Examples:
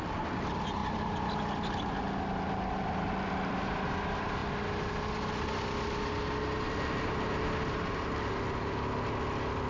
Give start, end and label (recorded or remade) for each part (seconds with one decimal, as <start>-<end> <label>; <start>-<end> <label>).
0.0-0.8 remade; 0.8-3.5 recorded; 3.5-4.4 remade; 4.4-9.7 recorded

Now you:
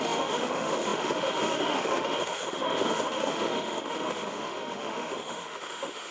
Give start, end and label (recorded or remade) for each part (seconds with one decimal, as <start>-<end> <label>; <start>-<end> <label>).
0.0-6.1 remade

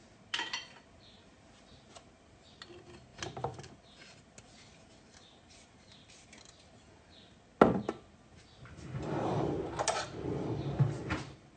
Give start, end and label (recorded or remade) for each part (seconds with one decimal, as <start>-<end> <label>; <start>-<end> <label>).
0.0-11.6 recorded

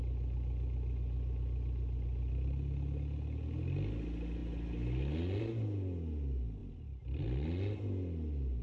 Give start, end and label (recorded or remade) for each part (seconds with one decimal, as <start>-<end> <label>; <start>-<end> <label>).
0.0-8.6 recorded

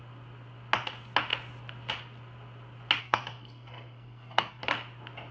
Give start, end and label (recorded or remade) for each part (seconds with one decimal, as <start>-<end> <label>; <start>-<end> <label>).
0.0-3.0 recorded; 3.0-4.6 remade; 4.6-5.3 recorded